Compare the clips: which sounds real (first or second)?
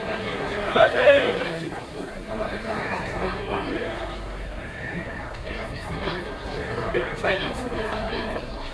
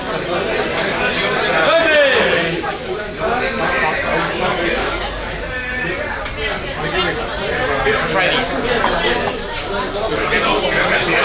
second